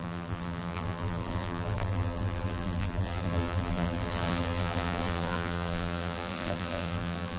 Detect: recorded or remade remade